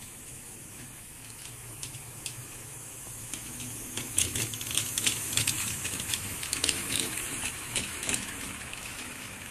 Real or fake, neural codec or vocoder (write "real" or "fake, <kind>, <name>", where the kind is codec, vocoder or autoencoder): fake, autoencoder, DAC-VAE